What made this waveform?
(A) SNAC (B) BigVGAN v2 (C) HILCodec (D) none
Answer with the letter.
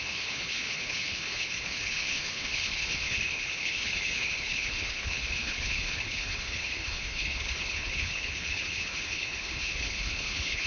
C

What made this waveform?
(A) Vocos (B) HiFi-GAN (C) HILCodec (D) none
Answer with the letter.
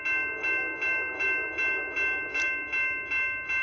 D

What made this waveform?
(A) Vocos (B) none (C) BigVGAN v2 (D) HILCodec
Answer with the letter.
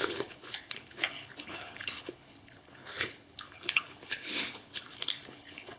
D